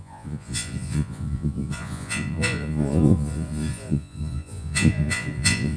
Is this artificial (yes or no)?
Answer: yes